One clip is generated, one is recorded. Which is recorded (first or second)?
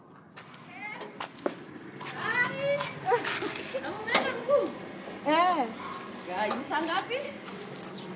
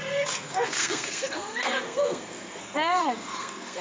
first